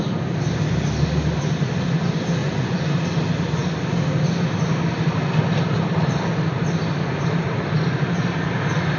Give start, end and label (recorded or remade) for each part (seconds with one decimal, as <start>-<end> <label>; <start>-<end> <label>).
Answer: 0.0-2.4 recorded; 2.4-2.9 remade; 2.9-9.0 recorded

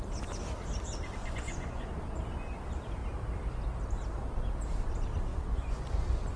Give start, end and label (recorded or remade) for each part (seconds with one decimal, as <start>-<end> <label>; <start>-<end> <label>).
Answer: 0.0-1.2 recorded; 1.2-2.0 remade; 2.0-5.3 recorded; 5.3-5.9 remade; 5.9-6.4 recorded

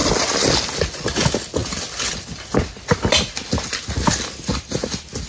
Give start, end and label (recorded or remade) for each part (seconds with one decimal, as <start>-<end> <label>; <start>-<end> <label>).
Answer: 0.0-5.3 recorded

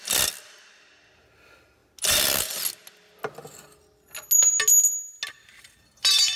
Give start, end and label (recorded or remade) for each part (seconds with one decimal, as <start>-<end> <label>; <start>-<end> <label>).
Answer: 0.0-6.4 recorded